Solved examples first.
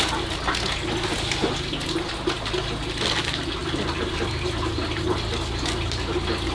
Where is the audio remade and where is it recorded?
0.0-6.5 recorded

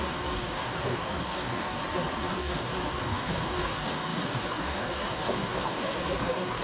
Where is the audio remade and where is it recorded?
0.0-1.8 remade; 1.8-2.3 recorded; 2.3-6.6 remade

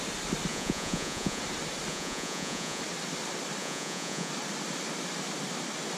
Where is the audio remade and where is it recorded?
0.0-0.5 recorded; 0.5-1.4 remade; 1.4-1.9 recorded; 1.9-2.8 remade; 2.8-3.6 recorded; 3.6-4.3 remade; 4.3-6.0 recorded

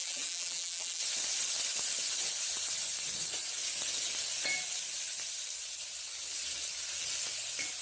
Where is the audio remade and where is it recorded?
0.0-1.0 remade; 1.0-7.8 recorded

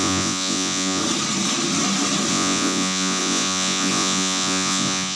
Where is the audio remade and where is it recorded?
0.0-1.0 remade; 1.0-2.3 recorded; 2.3-5.2 remade

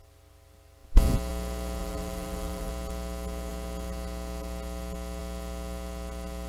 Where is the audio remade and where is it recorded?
0.0-1.8 recorded; 1.8-2.7 remade; 2.7-6.5 recorded